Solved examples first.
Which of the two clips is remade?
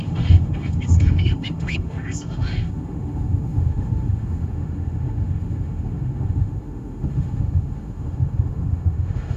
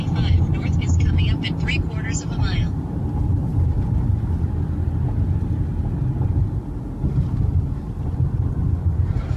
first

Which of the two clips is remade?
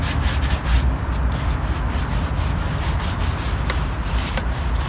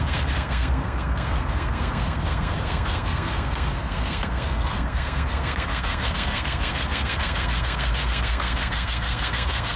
second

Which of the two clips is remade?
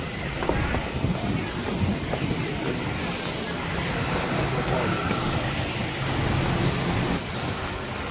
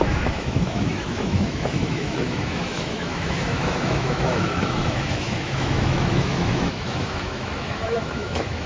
second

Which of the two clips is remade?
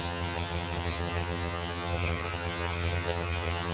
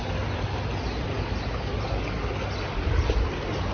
first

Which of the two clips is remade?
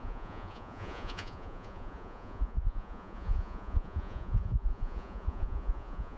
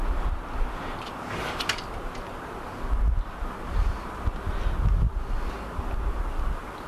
first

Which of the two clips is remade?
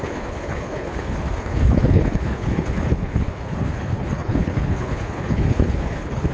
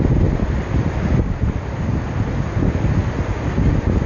first